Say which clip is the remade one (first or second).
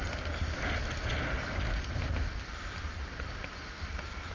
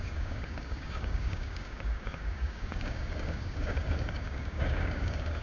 second